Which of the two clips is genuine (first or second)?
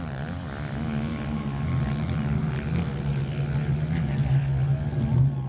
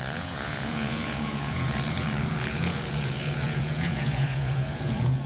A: first